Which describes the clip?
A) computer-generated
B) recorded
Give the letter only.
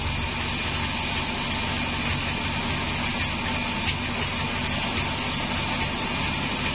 B